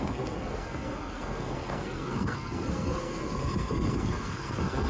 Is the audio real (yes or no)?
no